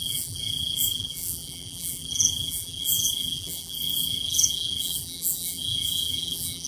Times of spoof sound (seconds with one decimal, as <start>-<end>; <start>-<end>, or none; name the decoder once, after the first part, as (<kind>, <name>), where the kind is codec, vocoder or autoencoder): 0.0-6.7 (vocoder, BigVGAN v2)